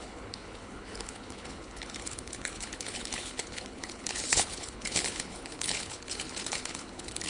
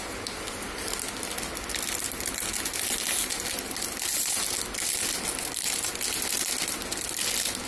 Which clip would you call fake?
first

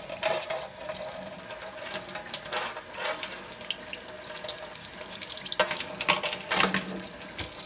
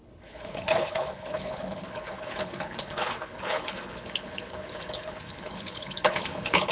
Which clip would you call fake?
second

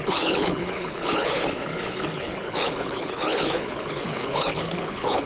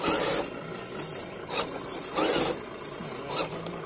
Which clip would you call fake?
first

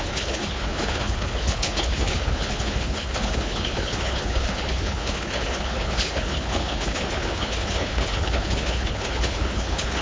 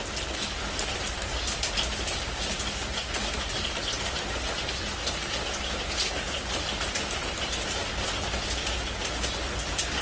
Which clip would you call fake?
first